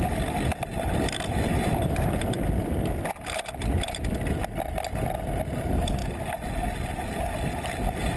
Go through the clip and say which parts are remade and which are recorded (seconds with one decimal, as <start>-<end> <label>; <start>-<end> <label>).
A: 0.0-0.7 recorded; 0.7-4.0 remade; 4.0-8.2 recorded